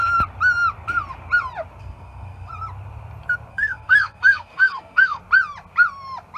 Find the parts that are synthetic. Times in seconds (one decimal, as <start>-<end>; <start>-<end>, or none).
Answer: 1.8-2.5; 3.5-5.2